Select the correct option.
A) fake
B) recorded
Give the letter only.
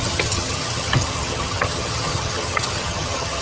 A